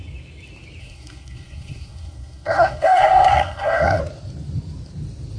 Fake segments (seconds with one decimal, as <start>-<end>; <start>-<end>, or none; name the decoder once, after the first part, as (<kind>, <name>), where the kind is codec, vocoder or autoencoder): 0.8-4.0 (codec, SNAC)